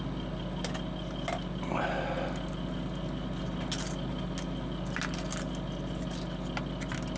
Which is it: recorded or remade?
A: recorded